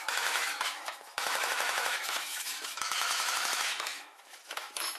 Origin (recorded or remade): remade